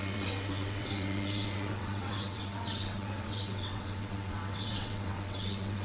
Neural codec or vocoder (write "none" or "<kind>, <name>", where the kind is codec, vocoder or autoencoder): vocoder, WaveNeXt